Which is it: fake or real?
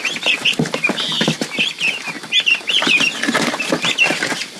real